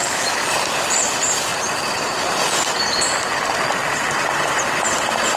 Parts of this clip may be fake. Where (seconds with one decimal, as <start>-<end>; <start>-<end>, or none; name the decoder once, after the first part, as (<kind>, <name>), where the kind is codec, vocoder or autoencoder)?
none